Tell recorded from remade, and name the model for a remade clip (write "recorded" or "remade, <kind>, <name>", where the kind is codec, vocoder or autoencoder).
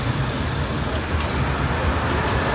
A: recorded